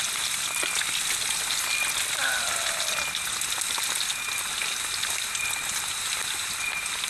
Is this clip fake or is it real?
real